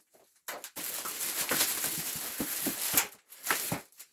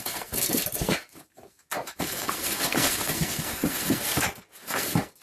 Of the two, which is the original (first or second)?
first